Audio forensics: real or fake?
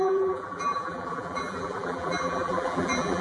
fake